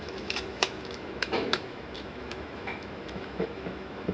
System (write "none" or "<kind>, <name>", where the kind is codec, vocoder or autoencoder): autoencoder, DAC-VAE